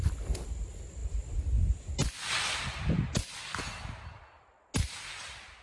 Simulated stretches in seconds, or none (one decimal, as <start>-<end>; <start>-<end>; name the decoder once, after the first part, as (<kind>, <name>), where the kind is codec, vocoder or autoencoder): none